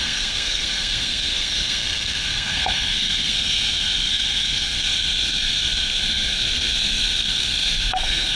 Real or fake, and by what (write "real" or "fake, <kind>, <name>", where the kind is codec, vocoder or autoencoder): fake, codec, SNAC